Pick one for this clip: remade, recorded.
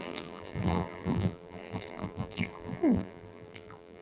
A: remade